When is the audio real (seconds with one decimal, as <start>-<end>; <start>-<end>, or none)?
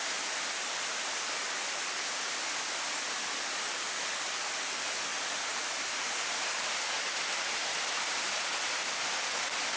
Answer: 0.0-9.8